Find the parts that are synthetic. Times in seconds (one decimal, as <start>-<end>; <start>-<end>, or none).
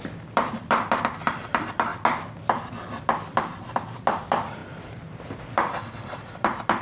0.0-1.9; 3.0-6.8